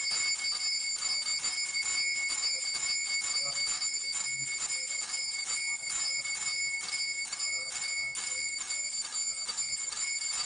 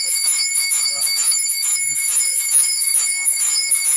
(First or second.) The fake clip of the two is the second